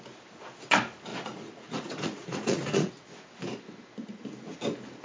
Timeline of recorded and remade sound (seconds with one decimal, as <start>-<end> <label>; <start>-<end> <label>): 0.0-1.1 recorded; 1.1-2.9 remade; 2.9-5.0 recorded